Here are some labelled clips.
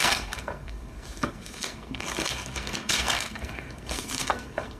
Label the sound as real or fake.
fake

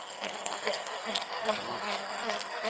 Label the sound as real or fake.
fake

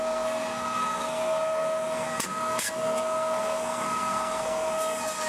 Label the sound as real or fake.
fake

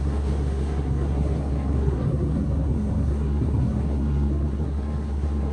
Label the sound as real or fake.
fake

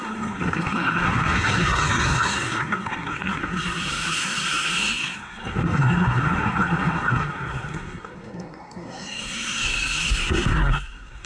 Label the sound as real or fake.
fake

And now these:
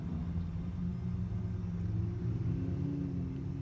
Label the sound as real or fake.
real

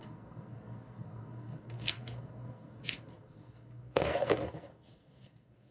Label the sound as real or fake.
fake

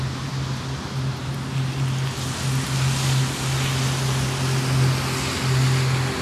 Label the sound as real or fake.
real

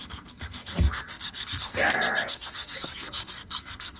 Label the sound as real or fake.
fake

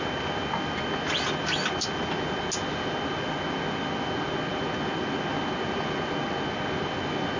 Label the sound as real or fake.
real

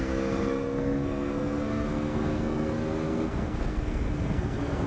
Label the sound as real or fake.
fake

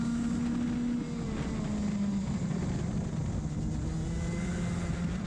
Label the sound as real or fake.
real